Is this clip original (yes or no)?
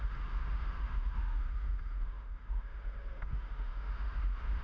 no